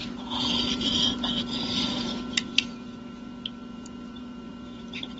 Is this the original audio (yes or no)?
no